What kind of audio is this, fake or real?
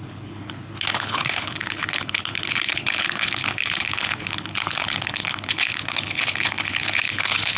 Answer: fake